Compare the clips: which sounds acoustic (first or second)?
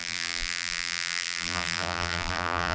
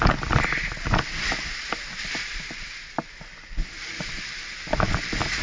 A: second